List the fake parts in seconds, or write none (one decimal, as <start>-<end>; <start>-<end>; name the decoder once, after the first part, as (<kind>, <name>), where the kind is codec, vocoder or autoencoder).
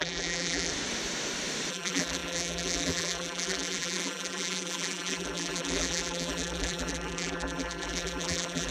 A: 0.0-0.7 (vocoder, BigVGAN v2); 1.7-8.7